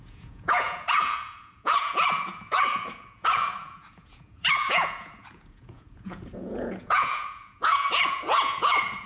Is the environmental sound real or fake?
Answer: fake